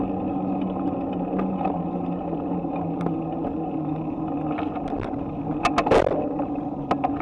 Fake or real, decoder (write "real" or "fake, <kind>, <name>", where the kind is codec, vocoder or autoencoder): real